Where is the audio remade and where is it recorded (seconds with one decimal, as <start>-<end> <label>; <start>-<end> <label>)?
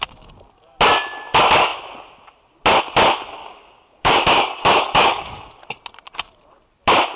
0.0-3.4 recorded; 3.4-5.5 remade; 5.5-7.2 recorded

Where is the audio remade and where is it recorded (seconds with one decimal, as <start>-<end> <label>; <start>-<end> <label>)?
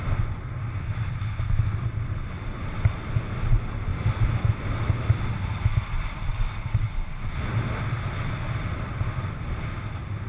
0.0-6.3 recorded; 6.3-7.2 remade; 7.2-10.3 recorded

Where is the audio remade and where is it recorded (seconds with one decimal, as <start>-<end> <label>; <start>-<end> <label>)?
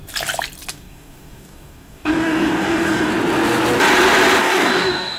0.0-0.7 recorded; 0.7-3.1 remade; 3.1-4.4 recorded; 4.4-5.2 remade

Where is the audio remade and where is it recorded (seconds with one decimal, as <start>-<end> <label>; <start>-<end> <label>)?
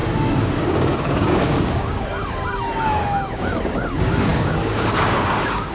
0.0-5.7 remade